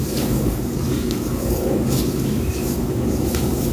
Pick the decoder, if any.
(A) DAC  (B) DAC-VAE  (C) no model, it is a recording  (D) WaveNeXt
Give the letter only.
A